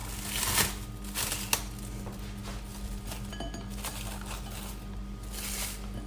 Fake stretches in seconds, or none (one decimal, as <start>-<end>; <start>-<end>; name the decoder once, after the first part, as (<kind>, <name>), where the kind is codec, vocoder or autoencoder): none